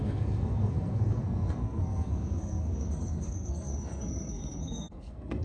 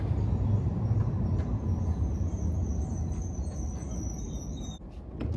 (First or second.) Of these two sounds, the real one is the second